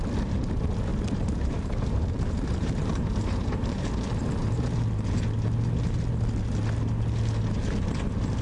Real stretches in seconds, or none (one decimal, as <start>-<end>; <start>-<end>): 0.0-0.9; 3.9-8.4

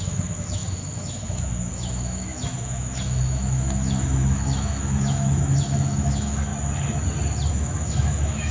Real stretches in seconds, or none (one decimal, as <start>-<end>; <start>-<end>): 6.5-7.5

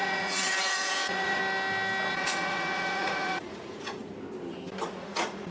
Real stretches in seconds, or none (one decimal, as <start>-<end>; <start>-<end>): 1.4-2.1; 4.0-4.8

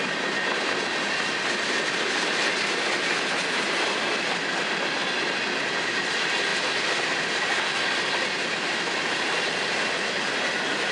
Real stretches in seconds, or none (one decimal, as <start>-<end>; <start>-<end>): 0.0-10.9

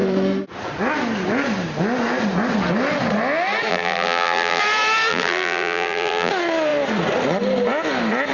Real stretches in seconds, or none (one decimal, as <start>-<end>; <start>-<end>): 0.0-3.7; 4.6-5.1; 6.3-8.3

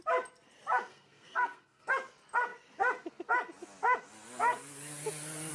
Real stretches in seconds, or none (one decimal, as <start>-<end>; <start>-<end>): 0.0-0.9; 1.9-5.5

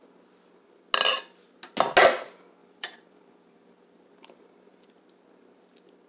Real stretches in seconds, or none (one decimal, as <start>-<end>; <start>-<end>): 0.0-2.6; 5.0-6.1

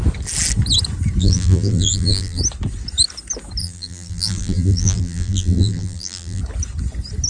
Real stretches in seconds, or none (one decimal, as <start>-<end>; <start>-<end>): 0.0-1.2; 2.4-3.6; 6.4-7.3